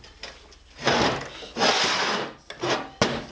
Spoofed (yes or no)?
no